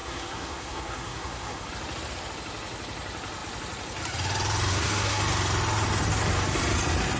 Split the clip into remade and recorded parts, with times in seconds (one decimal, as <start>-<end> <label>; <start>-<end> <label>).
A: 0.0-1.7 remade; 1.7-4.7 recorded; 4.7-5.2 remade; 5.2-7.2 recorded